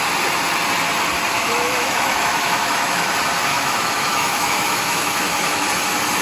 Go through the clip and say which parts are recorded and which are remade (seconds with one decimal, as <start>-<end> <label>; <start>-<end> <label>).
0.0-1.3 recorded; 1.3-3.1 remade; 3.1-3.5 recorded; 3.5-5.7 remade; 5.7-6.2 recorded